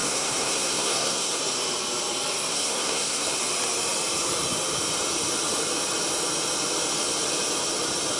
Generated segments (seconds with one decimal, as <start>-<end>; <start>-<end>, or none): 0.0-1.4; 2.5-3.4